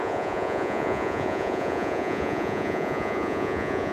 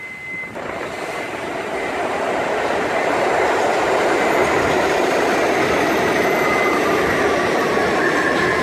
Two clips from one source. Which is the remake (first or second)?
first